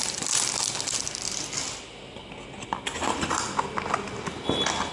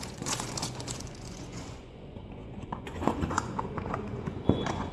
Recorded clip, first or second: first